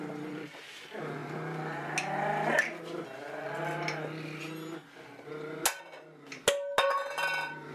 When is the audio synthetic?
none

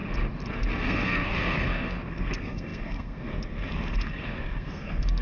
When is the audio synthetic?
0.5-5.2 (codec, SNAC)

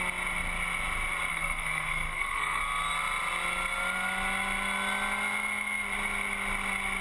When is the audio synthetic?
1.3-2.6 (codec, SNAC)

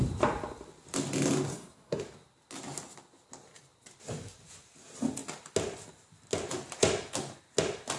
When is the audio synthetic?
1.5-2.0 (codec, SNAC)

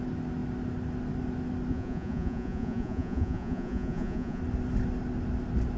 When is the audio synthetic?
1.7-4.4 (vocoder, Vocos)

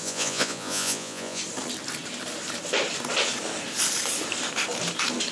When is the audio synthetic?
0.0-1.4 (vocoder, Vocos)